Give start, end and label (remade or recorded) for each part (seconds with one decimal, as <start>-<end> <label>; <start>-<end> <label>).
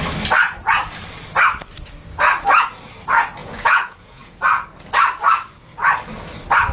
0.0-3.4 recorded; 3.4-4.4 remade; 4.4-6.7 recorded